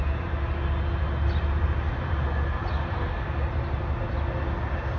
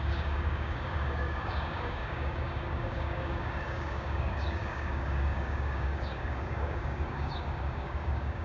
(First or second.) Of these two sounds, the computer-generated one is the second